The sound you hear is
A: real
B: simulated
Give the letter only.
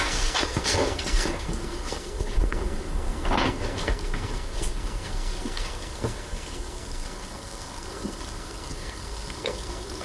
B